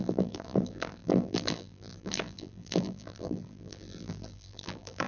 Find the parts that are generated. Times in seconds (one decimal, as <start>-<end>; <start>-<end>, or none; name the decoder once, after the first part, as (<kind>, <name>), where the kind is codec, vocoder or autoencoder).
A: 0.0-5.1 (vocoder, BigVGAN v2)